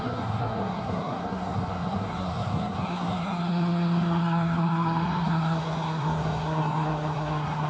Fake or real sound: fake